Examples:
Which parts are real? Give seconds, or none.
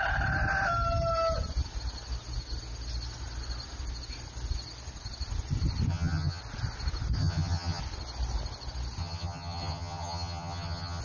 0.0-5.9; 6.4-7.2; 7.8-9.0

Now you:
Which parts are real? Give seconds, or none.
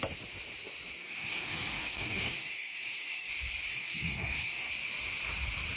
0.0-1.0; 3.3-3.7; 4.7-5.8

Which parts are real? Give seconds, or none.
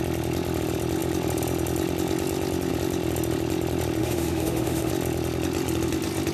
0.0-4.0; 4.9-6.3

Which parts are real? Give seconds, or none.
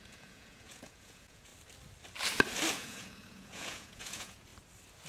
1.5-2.7; 4.5-5.1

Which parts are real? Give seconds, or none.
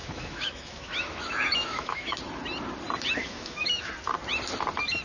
2.2-3.2; 3.9-5.0